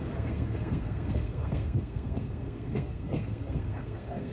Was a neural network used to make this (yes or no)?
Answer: yes